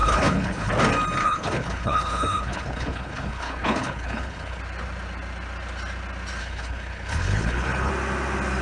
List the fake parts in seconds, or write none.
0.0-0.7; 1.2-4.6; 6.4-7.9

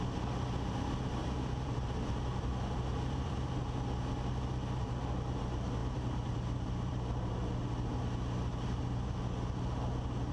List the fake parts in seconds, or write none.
1.2-3.5; 5.8-7.3

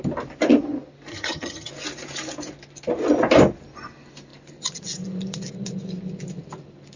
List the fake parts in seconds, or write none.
1.1-1.7

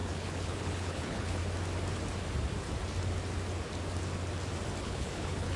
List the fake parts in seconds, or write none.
0.0-1.4; 4.8-5.6

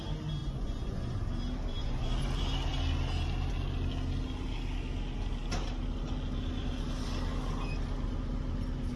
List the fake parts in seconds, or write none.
0.4-1.1; 1.7-2.2

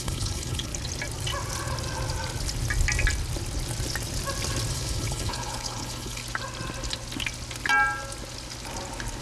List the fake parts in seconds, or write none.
0.0-0.7; 4.7-6.2

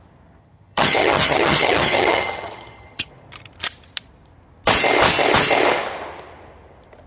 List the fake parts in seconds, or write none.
0.4-3.1

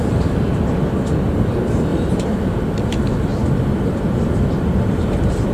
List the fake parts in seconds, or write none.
1.9-2.5; 3.3-5.5